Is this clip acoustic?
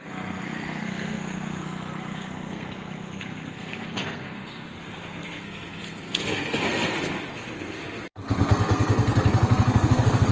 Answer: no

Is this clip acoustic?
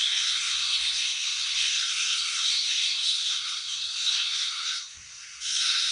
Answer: no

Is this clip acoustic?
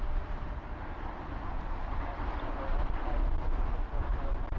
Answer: yes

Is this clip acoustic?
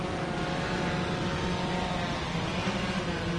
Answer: yes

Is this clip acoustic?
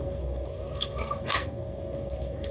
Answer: no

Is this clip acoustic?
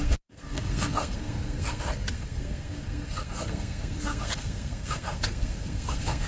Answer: no